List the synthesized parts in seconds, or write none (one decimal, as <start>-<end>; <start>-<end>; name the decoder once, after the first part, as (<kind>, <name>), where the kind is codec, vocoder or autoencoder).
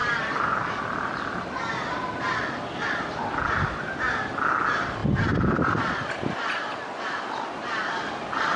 0.0-0.8 (vocoder, BigVGAN v2)